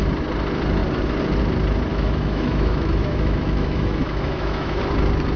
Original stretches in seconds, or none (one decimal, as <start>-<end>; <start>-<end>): 0.0-1.9; 4.8-5.4